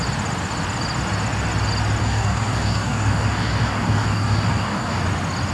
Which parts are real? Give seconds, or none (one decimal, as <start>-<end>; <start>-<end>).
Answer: 0.0-2.0; 5.0-5.5